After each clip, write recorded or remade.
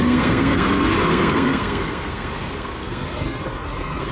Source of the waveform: remade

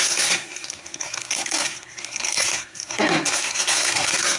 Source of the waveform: remade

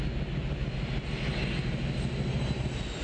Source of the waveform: recorded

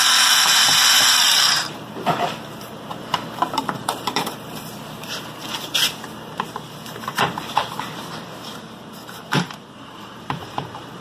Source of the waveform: remade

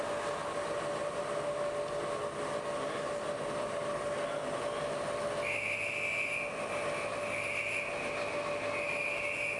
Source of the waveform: recorded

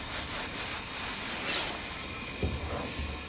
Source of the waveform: recorded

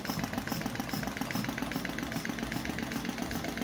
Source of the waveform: recorded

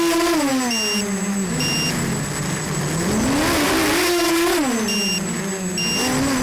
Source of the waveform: recorded